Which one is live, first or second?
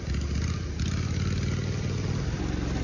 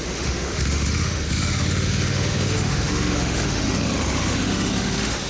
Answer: first